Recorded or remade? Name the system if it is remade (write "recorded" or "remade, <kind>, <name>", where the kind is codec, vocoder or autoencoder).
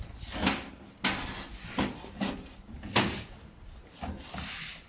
recorded